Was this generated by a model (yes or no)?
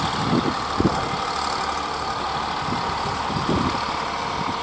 no